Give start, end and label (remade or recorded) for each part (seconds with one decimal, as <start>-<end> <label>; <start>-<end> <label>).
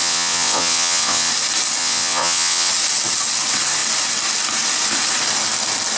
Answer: 0.0-1.3 remade; 1.3-1.8 recorded; 1.8-2.7 remade; 2.7-6.0 recorded